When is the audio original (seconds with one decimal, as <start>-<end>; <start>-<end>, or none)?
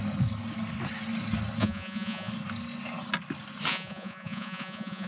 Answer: 0.0-1.6; 2.3-3.7